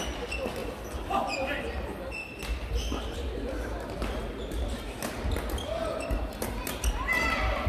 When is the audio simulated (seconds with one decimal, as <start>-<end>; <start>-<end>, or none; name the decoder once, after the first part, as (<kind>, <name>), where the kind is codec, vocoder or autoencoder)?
none

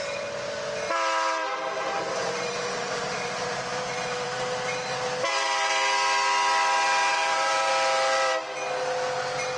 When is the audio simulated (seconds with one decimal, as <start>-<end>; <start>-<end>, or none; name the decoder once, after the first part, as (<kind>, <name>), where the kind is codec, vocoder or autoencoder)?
1.4-5.7 (vocoder, BigVGAN v2); 7.1-7.7

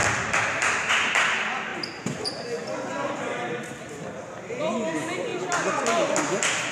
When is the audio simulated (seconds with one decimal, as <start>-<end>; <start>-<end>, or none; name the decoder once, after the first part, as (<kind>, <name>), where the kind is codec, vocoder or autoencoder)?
none